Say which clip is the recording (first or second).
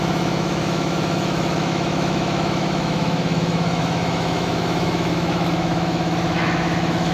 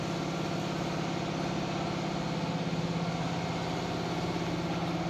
second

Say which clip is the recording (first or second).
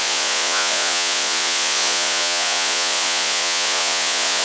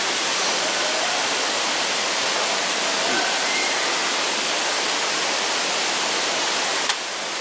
second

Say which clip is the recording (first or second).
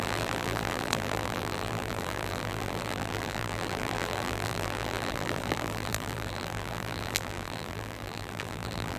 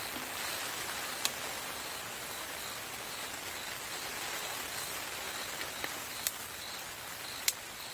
second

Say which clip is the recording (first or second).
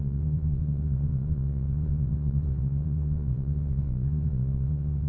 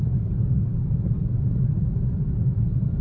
second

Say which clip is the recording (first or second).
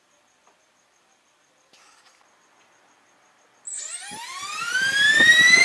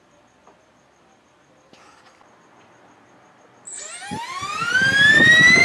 second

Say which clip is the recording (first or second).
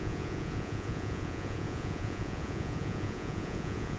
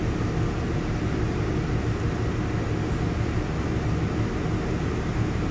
second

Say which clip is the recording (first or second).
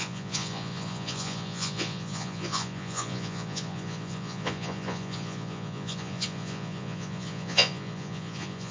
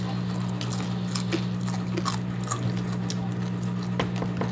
second